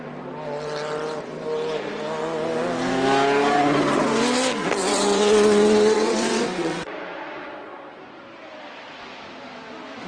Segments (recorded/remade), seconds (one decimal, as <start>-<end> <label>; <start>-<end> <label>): 0.0-4.8 recorded; 4.8-6.9 remade; 6.9-7.4 recorded; 7.4-8.0 remade; 8.0-10.1 recorded